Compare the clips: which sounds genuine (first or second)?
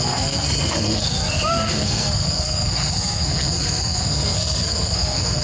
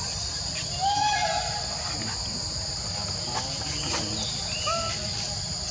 second